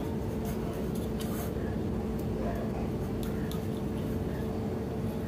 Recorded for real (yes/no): yes